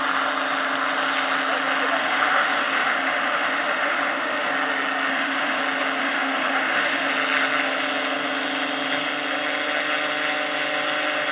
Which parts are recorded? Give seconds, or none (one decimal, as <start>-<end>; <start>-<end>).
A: 0.0-2.0; 4.5-5.1; 5.6-6.0; 7.1-11.3